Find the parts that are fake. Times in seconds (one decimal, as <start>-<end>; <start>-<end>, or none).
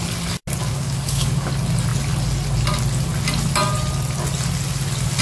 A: 0.6-1.5